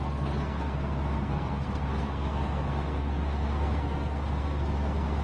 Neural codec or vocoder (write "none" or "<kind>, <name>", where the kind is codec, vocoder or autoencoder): codec, SNAC